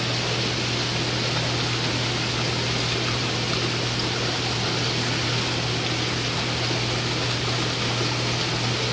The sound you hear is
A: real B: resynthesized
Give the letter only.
A